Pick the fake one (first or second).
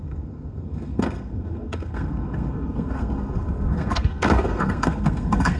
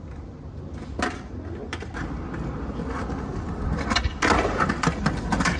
first